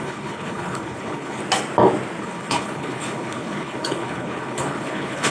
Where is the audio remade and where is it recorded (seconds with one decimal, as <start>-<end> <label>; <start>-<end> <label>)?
0.0-1.4 remade; 1.4-2.2 recorded; 2.2-5.3 remade